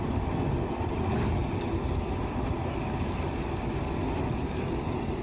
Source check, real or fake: fake